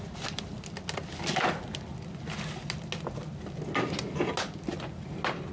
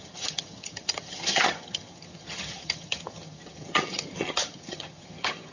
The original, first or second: first